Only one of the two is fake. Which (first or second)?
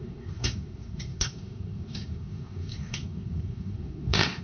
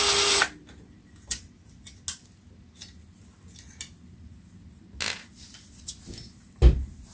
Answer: first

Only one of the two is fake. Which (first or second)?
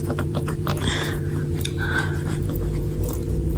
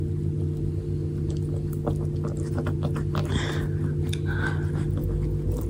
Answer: first